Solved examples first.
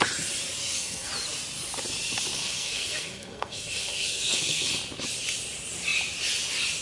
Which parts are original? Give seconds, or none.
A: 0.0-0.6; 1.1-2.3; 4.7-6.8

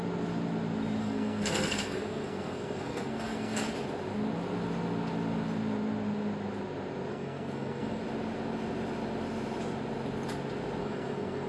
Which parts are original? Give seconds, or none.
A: 0.0-1.0; 3.7-7.1; 8.0-10.8

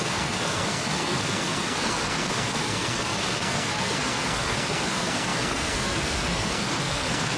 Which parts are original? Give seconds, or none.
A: none